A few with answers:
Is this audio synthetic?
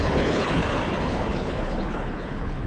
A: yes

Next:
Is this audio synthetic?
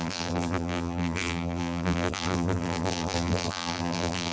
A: yes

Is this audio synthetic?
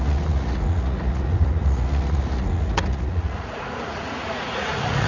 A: yes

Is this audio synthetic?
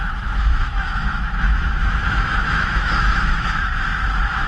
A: yes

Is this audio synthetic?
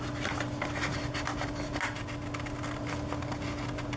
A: no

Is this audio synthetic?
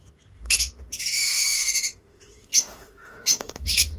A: yes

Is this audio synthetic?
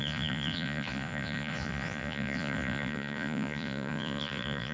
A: yes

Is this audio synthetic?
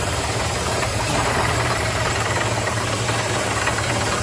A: yes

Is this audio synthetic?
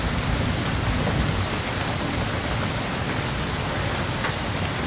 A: no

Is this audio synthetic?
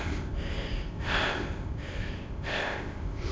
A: yes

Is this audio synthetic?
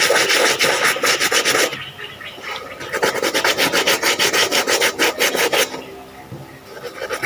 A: no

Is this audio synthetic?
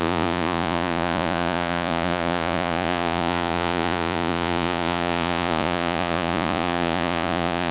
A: yes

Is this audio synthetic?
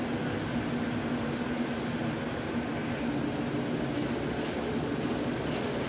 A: no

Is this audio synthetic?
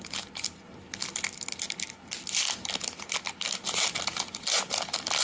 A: no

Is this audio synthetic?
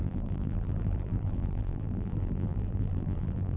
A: yes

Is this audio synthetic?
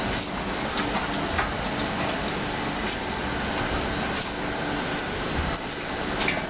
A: no